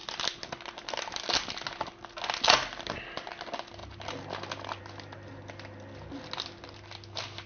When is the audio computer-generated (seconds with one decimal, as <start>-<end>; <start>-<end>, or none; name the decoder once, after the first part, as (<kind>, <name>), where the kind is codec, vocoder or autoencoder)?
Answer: none